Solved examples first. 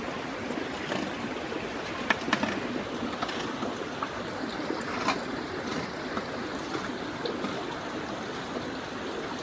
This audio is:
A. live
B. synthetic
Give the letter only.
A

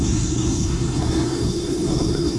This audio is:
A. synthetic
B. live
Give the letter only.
A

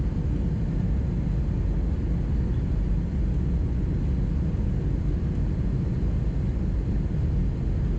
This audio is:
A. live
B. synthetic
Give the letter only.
A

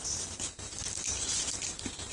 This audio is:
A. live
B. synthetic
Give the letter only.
A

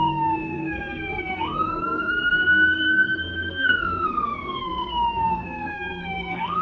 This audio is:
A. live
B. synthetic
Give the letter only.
B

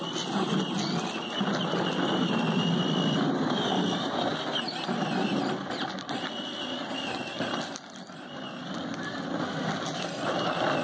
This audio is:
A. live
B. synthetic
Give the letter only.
A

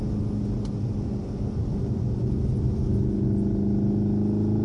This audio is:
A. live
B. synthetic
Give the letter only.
A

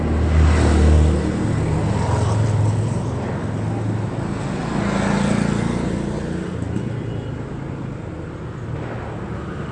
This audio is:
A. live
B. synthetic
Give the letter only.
A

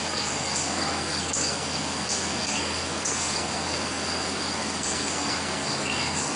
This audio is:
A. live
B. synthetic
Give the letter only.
B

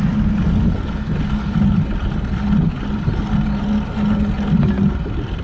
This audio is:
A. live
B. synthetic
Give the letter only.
A